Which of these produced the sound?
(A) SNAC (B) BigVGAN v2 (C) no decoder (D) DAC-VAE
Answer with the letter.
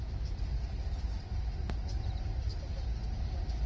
C